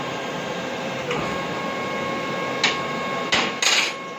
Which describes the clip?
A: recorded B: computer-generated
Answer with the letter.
A